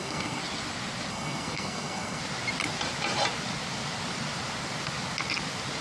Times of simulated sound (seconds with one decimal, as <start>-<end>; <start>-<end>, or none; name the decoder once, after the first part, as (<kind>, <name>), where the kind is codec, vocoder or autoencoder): 0.0-0.4 (codec, SNAC); 1.1-2.2